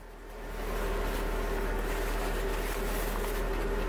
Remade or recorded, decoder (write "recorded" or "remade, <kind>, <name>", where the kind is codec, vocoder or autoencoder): recorded